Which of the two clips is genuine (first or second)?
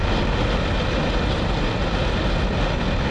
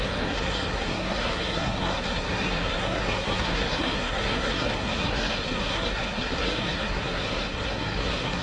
first